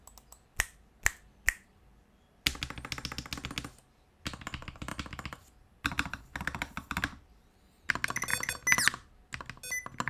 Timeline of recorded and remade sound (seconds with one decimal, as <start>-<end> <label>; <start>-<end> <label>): 0.0-4.9 recorded; 4.9-6.2 remade; 6.2-10.1 recorded